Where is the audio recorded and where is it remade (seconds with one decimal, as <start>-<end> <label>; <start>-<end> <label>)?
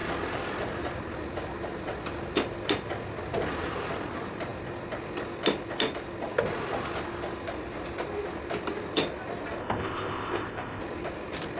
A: 0.0-9.6 recorded; 9.6-10.8 remade; 10.8-11.6 recorded